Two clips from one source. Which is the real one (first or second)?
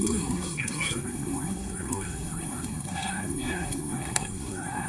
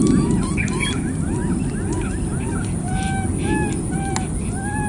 second